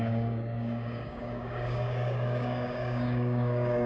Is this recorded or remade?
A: remade